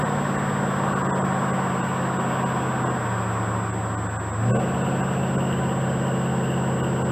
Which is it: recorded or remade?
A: recorded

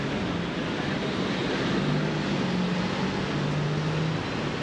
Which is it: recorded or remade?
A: recorded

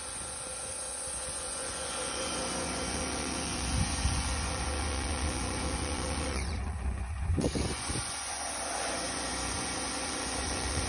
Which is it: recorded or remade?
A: remade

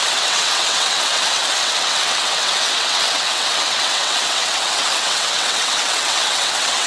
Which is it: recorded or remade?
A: remade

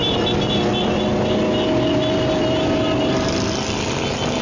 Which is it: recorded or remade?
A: recorded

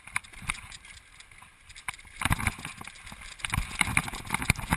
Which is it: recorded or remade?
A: recorded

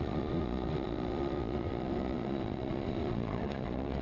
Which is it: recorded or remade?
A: remade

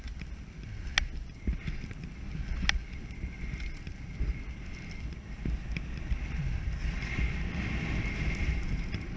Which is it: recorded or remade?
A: recorded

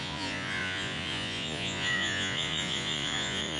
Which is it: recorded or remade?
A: remade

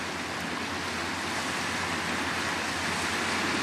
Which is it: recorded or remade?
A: recorded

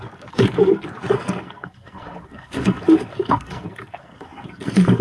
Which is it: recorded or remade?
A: remade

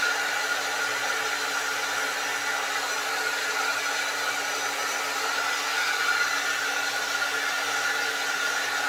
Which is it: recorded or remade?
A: recorded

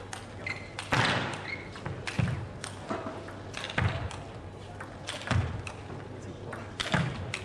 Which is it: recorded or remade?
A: recorded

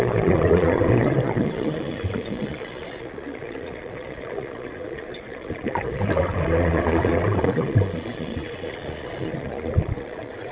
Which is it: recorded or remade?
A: remade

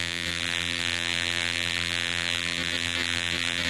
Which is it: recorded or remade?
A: remade